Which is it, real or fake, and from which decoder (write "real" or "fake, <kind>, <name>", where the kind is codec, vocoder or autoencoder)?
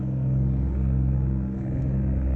fake, codec, SNAC